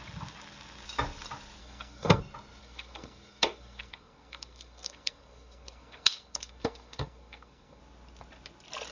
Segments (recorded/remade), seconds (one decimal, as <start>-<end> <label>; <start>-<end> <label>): 0.0-1.6 recorded; 1.6-2.2 remade; 2.2-2.6 recorded; 2.6-7.8 remade; 7.8-8.9 recorded